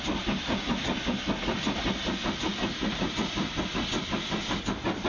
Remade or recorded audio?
recorded